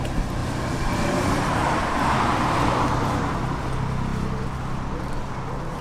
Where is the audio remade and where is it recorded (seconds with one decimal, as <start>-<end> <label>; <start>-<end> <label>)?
0.0-0.4 recorded; 0.4-1.8 remade; 1.8-5.8 recorded